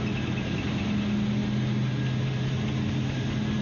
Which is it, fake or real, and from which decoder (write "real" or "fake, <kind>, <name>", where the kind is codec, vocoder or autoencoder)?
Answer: real